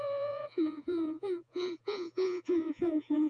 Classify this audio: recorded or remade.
remade